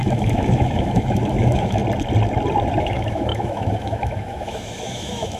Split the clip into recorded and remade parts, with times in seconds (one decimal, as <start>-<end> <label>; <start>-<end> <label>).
0.0-1.8 remade; 1.8-2.8 recorded; 2.8-5.4 remade